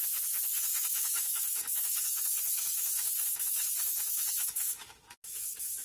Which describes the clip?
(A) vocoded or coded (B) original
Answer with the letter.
A